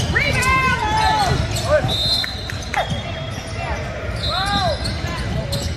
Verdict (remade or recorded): recorded